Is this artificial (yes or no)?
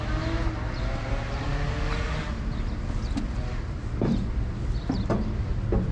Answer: no